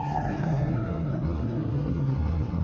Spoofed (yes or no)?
yes